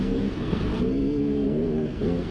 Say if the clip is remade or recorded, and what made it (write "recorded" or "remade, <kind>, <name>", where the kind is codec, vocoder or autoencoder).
remade, codec, SNAC